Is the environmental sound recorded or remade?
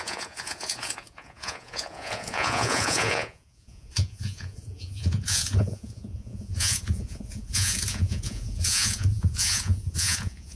remade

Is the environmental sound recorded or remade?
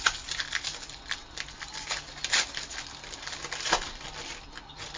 recorded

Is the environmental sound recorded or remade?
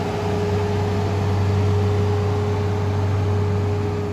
recorded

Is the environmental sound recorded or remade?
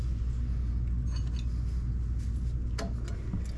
recorded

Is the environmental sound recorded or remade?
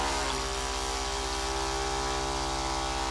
recorded